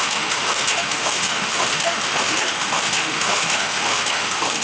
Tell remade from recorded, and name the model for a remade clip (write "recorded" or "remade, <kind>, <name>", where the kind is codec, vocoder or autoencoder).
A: remade, autoencoder, DAC-VAE